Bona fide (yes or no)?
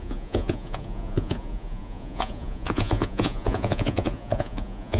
no